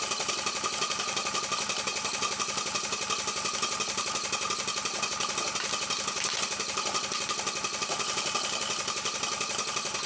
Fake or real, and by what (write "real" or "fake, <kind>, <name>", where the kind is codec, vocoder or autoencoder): real